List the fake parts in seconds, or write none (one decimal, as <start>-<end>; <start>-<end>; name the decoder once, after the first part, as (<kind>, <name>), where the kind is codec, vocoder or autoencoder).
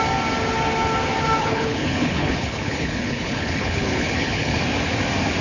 1.4-4.6 (codec, HILCodec)